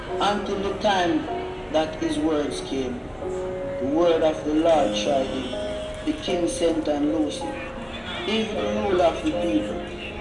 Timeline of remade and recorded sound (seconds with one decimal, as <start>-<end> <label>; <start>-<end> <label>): 0.0-10.2 recorded